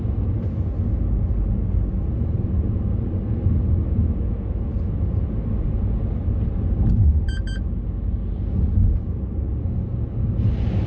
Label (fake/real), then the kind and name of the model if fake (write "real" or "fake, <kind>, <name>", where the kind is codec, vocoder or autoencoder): real